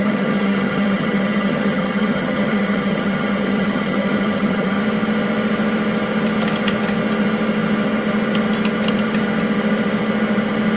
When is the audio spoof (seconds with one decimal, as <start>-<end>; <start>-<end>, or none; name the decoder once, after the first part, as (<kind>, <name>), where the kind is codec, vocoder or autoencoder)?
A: 0.0-4.8 (vocoder, HiFi-GAN)